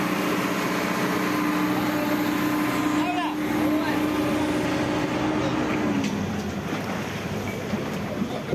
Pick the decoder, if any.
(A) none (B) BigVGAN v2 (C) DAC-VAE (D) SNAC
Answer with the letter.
A